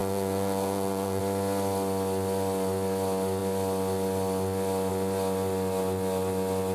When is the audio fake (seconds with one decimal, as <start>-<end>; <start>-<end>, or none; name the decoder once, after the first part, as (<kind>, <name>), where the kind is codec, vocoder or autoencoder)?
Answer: 0.0-1.2 (vocoder, Vocos)